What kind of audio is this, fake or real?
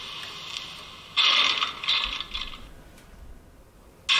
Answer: real